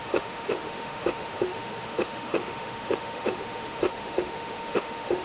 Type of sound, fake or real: fake